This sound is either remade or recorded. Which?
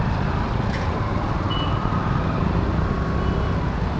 recorded